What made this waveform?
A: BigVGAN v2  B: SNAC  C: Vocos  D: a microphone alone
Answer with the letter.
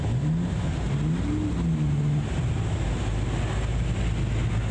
D